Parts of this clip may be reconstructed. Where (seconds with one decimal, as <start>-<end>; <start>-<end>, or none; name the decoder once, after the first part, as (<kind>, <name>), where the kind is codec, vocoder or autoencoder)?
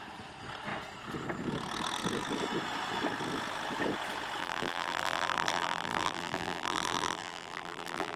4.4-8.2 (vocoder, BigVGAN v2)